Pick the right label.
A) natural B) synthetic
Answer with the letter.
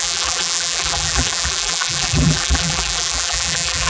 B